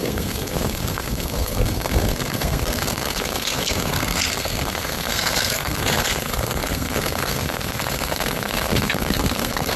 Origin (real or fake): fake